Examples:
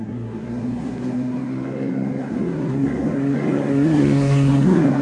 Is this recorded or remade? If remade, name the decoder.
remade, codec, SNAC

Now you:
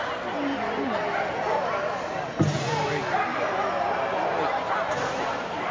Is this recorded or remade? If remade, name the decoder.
recorded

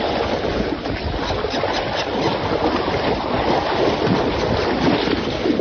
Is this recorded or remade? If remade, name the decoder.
recorded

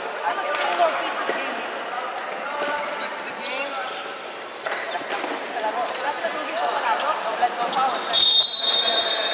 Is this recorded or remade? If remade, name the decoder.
recorded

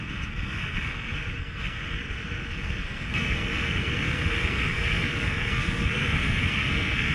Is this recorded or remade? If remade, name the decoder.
remade, codec, SNAC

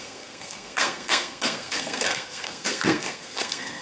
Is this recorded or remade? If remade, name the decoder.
remade, codec, SNAC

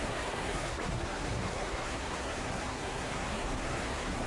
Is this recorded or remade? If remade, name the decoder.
remade, codec, SNAC